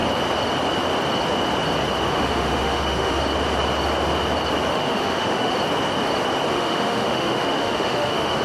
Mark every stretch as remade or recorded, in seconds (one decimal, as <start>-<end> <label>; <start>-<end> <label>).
0.0-2.1 recorded; 2.1-3.2 remade; 3.2-4.7 recorded; 4.7-5.5 remade; 5.5-6.5 recorded; 6.5-8.4 remade